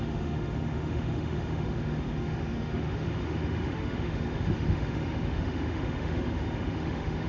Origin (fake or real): fake